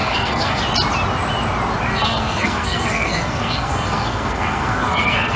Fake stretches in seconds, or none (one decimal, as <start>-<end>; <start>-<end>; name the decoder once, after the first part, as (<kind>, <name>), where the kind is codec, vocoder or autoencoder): 0.0-0.6 (codec, SNAC); 1.9-5.4